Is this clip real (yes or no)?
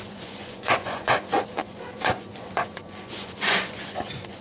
no